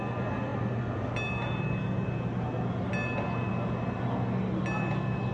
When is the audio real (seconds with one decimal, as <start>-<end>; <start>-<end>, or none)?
0.0-5.3